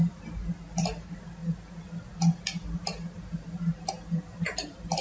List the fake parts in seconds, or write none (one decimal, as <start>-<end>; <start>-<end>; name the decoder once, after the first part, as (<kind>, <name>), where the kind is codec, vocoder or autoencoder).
none